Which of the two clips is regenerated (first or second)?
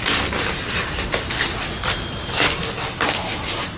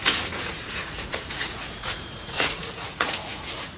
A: second